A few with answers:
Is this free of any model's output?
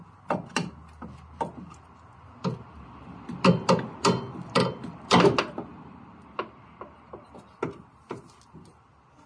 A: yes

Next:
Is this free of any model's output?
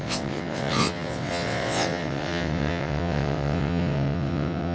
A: no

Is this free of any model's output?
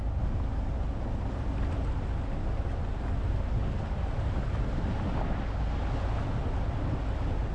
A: yes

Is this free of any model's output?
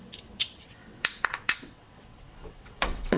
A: no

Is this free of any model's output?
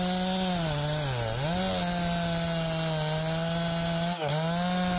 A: yes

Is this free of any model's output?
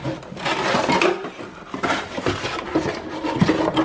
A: yes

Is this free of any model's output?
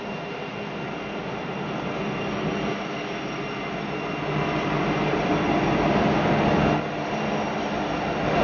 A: yes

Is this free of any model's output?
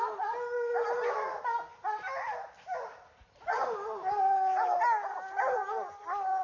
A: yes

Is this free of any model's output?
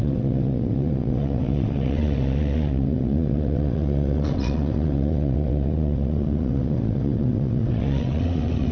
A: no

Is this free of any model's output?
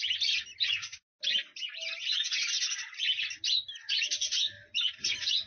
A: yes